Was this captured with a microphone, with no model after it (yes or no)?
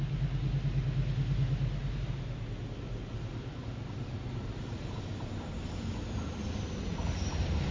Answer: yes